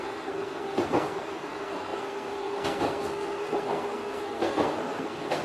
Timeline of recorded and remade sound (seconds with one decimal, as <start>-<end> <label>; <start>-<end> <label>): 0.0-5.4 remade